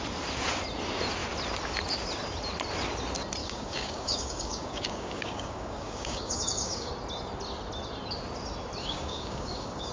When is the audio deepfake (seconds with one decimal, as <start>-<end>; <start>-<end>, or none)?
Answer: 3.4-6.9; 8.8-9.9